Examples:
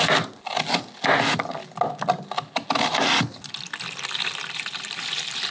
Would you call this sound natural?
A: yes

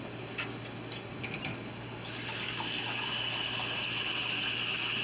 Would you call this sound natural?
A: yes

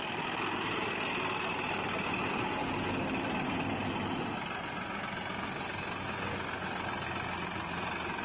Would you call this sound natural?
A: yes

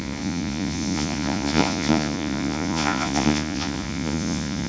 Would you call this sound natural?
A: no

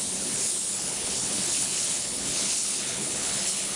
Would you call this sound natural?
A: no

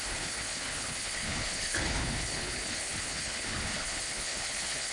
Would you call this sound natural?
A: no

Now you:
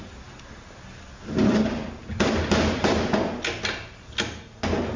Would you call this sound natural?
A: yes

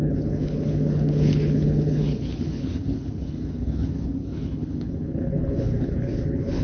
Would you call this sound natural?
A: no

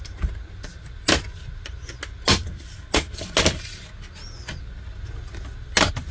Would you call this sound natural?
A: yes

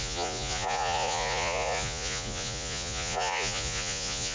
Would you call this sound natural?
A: no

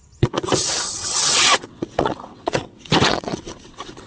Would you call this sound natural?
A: no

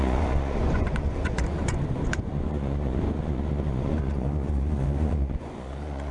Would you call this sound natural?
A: no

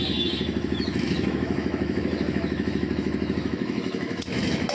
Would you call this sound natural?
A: no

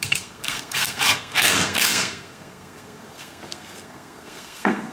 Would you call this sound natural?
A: no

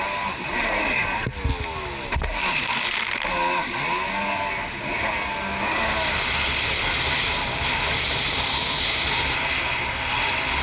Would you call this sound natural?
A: yes